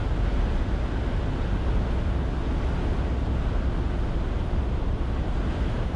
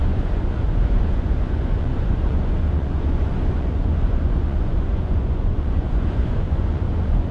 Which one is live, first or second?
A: first